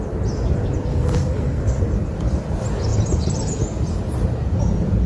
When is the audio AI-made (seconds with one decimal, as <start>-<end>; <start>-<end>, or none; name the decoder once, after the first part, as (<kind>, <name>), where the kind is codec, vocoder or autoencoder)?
0.9-1.8 (codec, SNAC)